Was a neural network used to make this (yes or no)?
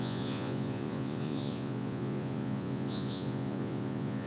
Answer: yes